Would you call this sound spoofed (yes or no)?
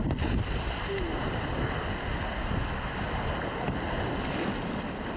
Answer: no